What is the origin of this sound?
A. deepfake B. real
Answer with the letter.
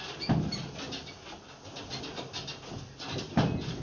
B